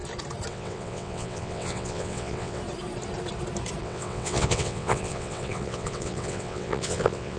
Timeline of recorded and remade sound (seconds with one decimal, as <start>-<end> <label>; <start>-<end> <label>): 0.0-0.5 recorded; 0.5-2.6 remade; 2.6-3.8 recorded; 3.8-7.4 remade

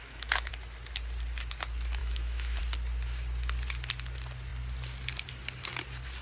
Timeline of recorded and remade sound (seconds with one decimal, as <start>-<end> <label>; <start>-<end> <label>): 0.0-0.5 remade; 0.5-2.0 recorded; 2.0-2.6 remade; 2.6-6.2 recorded

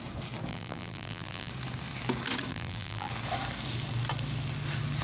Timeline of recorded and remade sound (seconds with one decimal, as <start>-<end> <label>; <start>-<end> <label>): 0.0-0.5 recorded; 0.5-1.5 remade; 1.5-2.5 recorded; 2.5-3.1 remade; 3.1-5.0 recorded

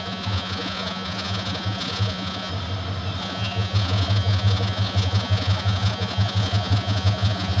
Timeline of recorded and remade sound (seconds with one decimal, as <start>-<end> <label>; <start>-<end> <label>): 0.0-2.5 remade; 2.5-3.2 recorded; 3.2-7.6 remade

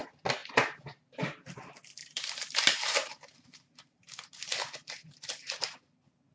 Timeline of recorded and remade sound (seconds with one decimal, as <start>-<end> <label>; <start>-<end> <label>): 0.0-2.0 recorded; 2.0-5.8 remade; 5.8-6.3 recorded

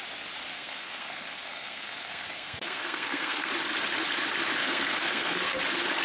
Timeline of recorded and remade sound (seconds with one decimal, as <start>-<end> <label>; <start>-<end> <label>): 0.0-0.5 recorded; 0.5-3.5 remade; 3.5-4.6 recorded; 4.6-5.6 remade; 5.6-6.0 recorded